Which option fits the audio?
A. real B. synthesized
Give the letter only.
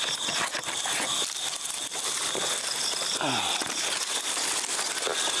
A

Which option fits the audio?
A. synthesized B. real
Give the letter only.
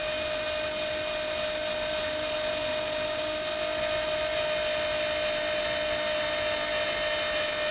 B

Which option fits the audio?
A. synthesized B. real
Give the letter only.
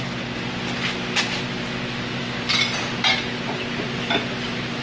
B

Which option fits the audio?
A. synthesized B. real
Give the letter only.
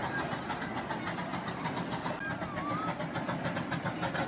B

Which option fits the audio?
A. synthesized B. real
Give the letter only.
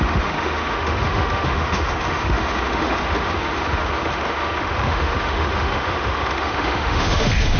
A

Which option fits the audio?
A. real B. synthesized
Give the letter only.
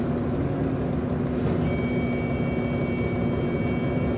A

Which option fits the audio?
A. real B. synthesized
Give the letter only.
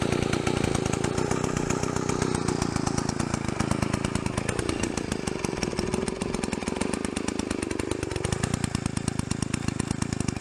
A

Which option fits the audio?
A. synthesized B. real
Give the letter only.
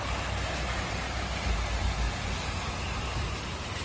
B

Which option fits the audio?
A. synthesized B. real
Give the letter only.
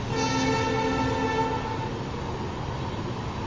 B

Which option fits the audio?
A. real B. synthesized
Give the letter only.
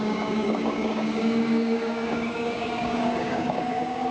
B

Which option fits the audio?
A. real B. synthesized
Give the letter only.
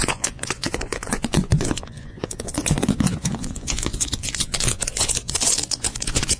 B